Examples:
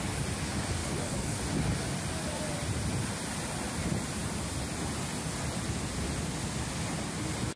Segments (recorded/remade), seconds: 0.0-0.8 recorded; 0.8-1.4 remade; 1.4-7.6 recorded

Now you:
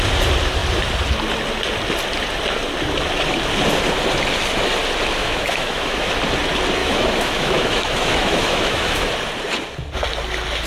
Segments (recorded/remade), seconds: 0.0-5.2 recorded; 5.2-6.1 remade; 6.1-6.8 recorded; 6.8-9.1 remade; 9.1-10.7 recorded